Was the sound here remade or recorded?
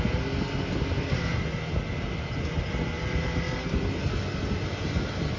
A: recorded